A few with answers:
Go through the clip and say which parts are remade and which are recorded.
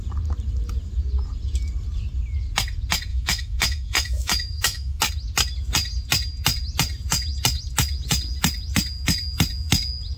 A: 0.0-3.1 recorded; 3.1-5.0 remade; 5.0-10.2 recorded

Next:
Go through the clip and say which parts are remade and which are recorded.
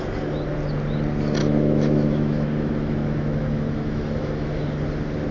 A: 0.0-1.4 recorded; 1.4-4.6 remade; 4.6-5.3 recorded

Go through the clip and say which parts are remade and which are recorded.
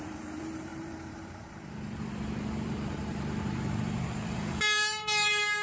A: 0.0-5.6 remade